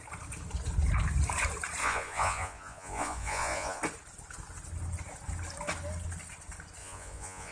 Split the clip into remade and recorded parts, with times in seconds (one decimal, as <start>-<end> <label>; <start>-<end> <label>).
0.0-1.8 recorded; 1.8-3.8 remade; 3.8-6.8 recorded; 6.8-7.5 remade